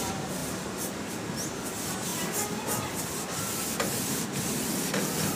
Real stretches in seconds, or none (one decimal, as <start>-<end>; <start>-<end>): 0.0-5.4